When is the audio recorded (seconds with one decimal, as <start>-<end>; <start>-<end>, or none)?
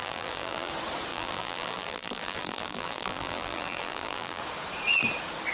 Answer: 0.7-1.1; 4.4-5.5